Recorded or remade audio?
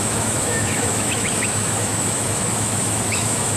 remade